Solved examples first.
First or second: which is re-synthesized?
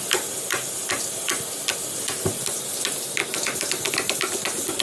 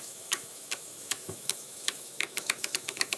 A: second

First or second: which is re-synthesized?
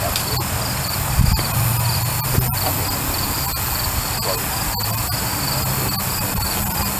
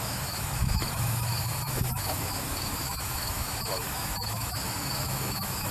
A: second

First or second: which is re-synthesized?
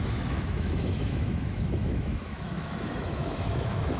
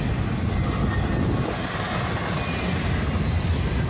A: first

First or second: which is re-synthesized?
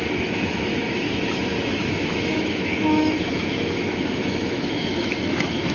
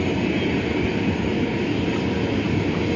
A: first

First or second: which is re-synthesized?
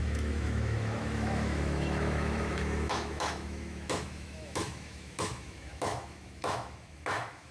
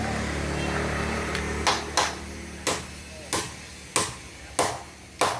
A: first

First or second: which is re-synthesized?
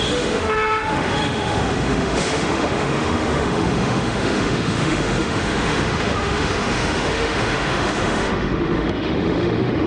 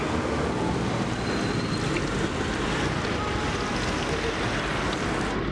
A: first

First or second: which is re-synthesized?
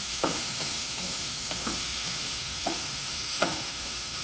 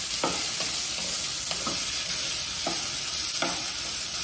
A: first